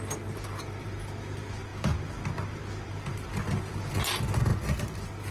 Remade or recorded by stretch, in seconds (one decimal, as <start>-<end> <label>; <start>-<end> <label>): 0.0-5.3 recorded